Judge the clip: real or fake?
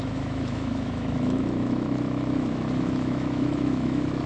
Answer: fake